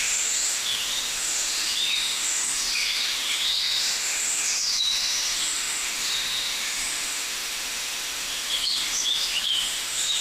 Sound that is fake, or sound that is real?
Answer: fake